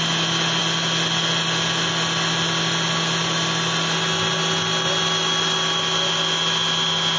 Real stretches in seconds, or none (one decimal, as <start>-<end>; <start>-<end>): 0.0-7.2

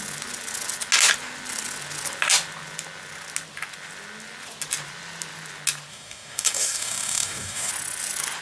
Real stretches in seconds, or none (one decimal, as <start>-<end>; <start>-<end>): 0.0-5.9; 7.7-8.4

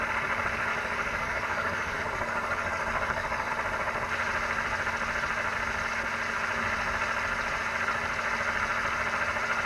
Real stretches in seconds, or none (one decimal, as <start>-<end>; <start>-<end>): 0.0-0.7; 3.5-9.7

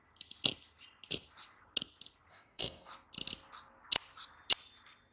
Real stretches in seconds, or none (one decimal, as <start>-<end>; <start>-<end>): 0.0-2.3; 2.9-5.1

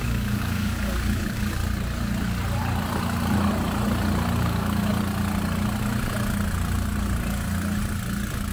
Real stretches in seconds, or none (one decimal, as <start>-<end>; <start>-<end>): 1.6-4.4; 4.9-8.5

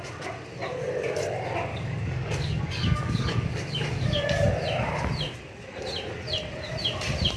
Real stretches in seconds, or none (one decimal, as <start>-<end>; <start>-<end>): 0.0-1.7; 4.5-7.4